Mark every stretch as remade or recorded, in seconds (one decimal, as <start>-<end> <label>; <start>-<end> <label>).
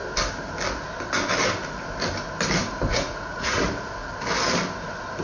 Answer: 0.0-2.9 recorded; 2.9-3.6 remade; 3.6-5.2 recorded